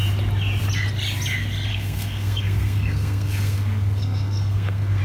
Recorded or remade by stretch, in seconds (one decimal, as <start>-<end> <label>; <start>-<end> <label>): 0.0-1.7 recorded; 1.7-5.0 remade

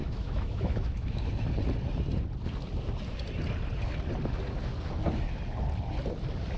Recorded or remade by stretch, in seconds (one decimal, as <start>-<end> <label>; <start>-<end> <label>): 0.0-1.3 remade; 1.3-6.6 recorded

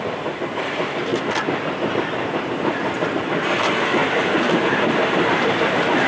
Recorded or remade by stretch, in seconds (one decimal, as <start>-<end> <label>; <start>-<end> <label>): 0.0-1.1 remade; 1.1-3.2 recorded; 3.2-6.1 remade

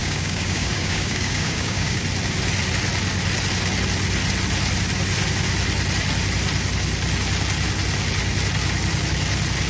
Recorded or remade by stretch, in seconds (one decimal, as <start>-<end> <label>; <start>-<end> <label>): 0.0-2.0 remade; 2.0-9.7 recorded

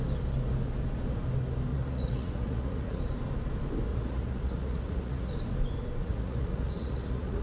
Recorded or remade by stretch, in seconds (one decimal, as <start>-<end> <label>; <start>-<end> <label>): 0.0-1.7 recorded; 1.7-3.0 remade; 3.0-3.9 recorded; 3.9-5.3 remade; 5.3-6.0 recorded; 6.0-7.4 remade

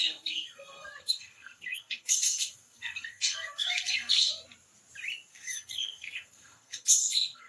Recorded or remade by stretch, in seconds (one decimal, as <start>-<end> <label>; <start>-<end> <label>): 0.0-4.3 remade; 4.3-5.3 recorded; 5.3-7.5 remade

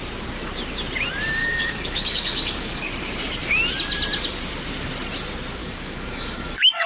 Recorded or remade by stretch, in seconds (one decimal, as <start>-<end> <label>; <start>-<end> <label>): 0.0-1.4 recorded; 1.4-2.9 remade; 2.9-5.6 recorded; 5.6-6.9 remade